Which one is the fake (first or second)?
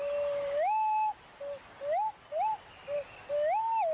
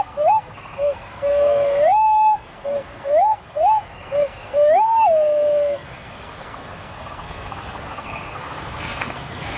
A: second